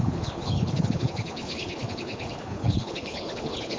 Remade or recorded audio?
remade